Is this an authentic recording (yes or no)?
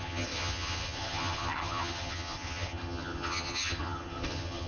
no